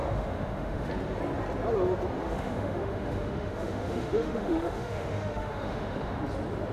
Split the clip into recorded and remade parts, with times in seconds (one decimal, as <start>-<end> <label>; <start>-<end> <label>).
0.0-0.9 remade; 0.9-2.2 recorded; 2.2-6.2 remade; 6.2-6.7 recorded